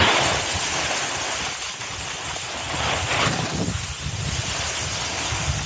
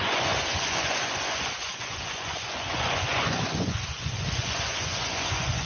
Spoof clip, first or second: second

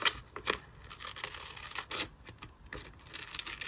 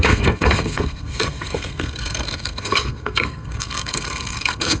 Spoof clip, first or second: second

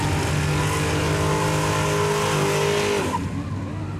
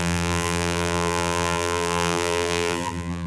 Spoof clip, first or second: second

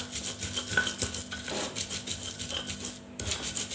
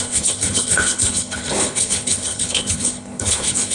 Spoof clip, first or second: second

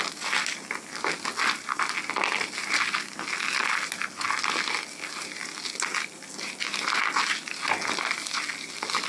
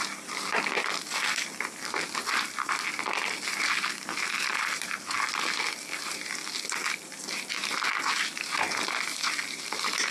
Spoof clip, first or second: second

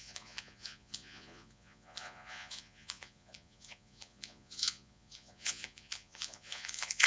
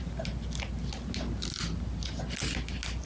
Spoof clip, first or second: first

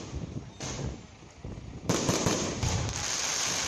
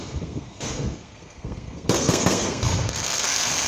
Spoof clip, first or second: second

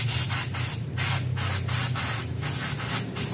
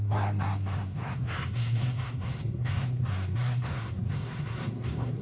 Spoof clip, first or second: second